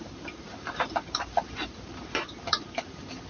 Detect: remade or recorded remade